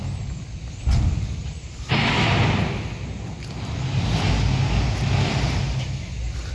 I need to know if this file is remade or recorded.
recorded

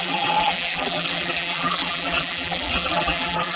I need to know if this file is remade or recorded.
remade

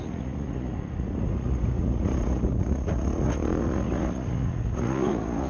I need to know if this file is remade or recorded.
remade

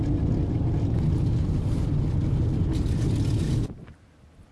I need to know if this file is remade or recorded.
recorded